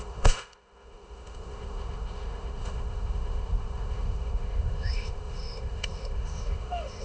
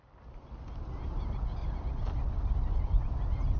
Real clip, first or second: second